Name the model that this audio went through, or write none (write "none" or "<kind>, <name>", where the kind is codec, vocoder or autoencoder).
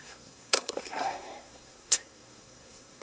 codec, SNAC